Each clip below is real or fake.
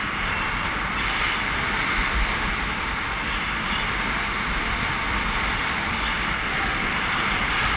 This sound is fake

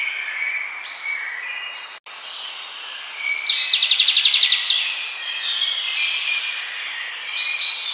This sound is real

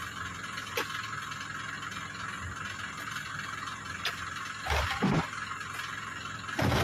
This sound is real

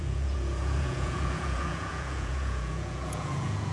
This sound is fake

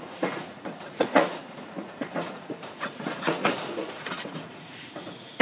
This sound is fake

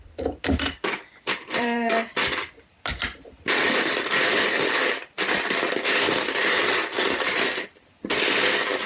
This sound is fake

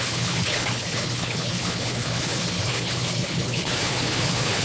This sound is fake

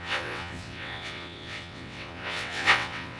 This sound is fake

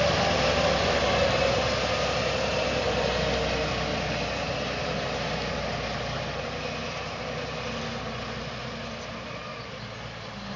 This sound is real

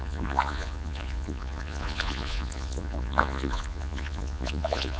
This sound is fake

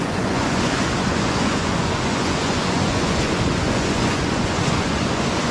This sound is fake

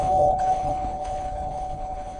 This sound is fake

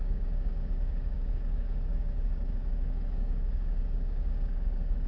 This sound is fake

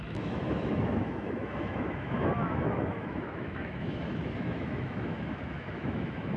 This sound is fake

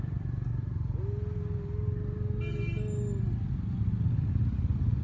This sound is real